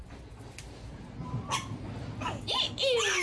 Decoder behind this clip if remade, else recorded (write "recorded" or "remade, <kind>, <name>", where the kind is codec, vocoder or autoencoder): recorded